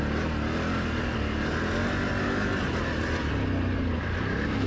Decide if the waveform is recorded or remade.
recorded